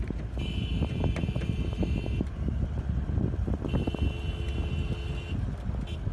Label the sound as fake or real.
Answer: real